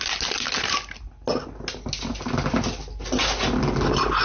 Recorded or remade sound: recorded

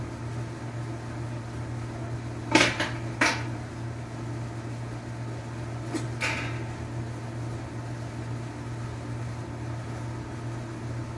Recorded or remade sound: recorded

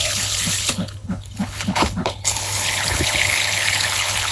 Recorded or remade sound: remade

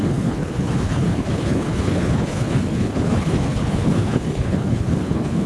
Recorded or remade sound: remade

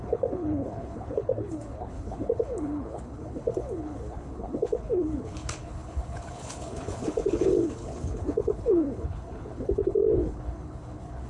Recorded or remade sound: remade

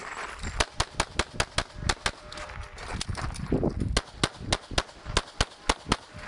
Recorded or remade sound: recorded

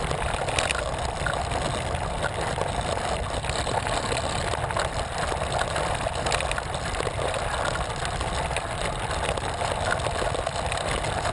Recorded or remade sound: recorded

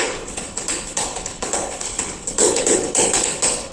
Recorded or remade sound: remade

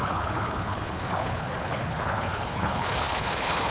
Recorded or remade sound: remade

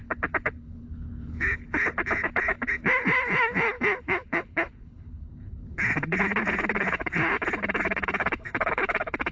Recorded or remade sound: remade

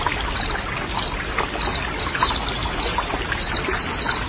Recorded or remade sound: recorded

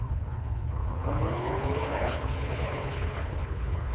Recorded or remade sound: remade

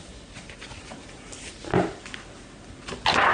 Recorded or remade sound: recorded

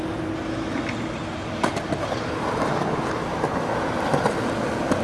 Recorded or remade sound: recorded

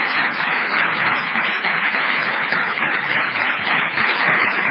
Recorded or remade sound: remade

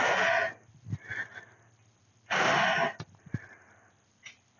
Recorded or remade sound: recorded